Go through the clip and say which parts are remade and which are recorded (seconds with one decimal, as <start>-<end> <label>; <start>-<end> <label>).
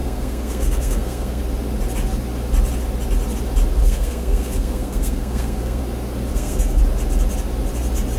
0.0-1.4 remade; 1.4-3.8 recorded; 3.8-5.8 remade; 5.8-6.3 recorded; 6.3-6.8 remade; 6.8-8.2 recorded